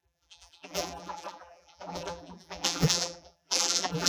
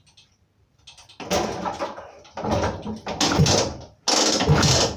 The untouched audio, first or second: second